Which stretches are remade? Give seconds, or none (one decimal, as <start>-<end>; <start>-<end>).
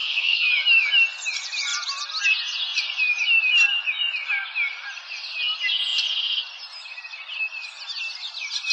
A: 0.0-0.5